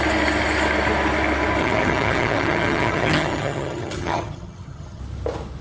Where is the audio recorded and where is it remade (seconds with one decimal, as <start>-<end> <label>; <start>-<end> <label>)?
0.0-1.6 recorded; 1.6-5.0 remade; 5.0-5.6 recorded